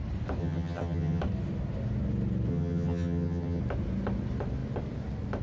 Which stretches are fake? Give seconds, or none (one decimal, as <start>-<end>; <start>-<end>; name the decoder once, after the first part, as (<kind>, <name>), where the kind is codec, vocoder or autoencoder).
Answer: 0.4-1.2 (vocoder, HiFi-GAN); 2.5-3.6